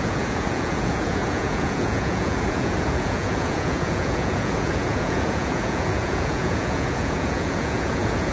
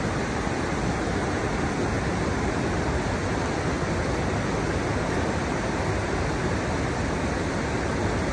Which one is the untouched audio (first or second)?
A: second